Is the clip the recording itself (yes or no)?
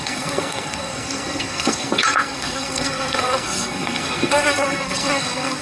no